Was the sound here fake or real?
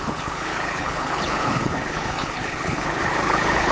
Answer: fake